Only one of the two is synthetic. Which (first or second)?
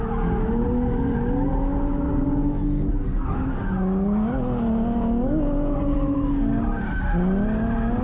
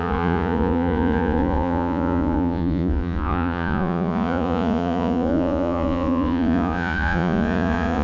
second